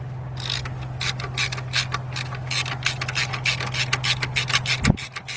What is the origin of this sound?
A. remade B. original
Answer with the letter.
B